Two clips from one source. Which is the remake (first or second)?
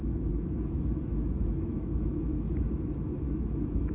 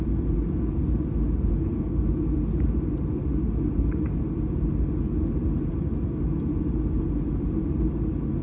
first